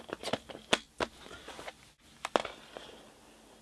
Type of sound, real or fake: real